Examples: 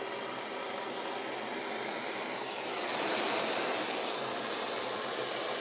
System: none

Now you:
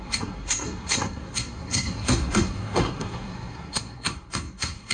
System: codec, SNAC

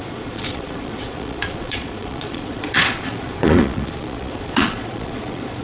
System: vocoder, Vocos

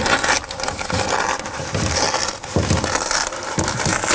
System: none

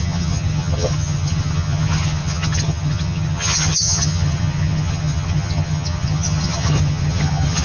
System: vocoder, HiFi-GAN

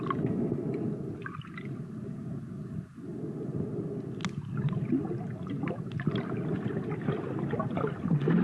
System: none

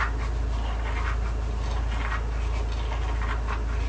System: none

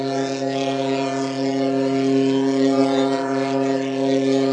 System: vocoder, BigVGAN v2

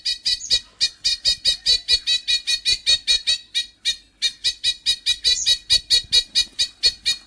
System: none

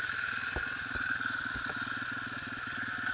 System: none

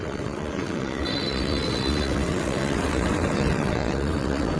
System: vocoder, WaveNeXt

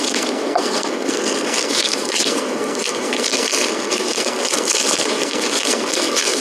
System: codec, SNAC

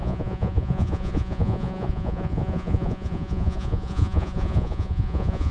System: vocoder, Vocos